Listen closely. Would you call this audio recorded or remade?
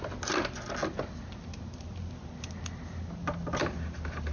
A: recorded